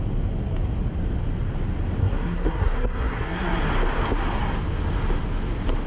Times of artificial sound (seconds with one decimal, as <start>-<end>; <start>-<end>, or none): 2.0-3.6